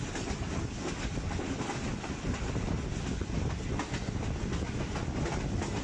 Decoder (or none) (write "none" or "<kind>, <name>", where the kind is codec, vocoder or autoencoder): none